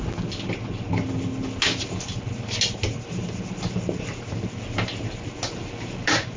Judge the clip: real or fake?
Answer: real